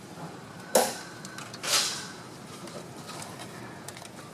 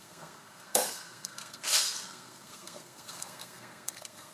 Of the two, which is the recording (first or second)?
first